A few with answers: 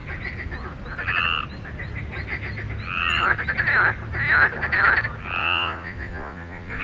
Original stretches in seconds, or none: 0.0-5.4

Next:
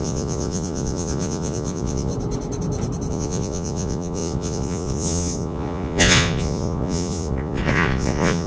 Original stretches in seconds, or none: 2.1-3.1

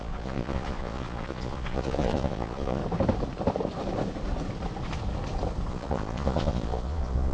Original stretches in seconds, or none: 2.8-5.7

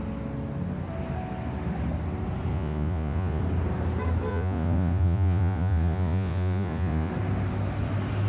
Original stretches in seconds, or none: 0.0-2.5; 3.4-4.3; 7.1-8.3

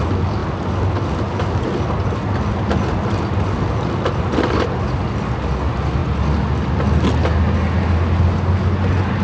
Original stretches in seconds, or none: 0.0-9.2

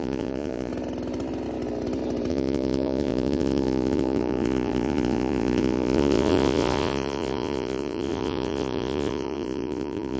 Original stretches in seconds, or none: 0.7-2.3